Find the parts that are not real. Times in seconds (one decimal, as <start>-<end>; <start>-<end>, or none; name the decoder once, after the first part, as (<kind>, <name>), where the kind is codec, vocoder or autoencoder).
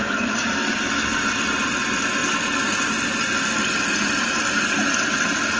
none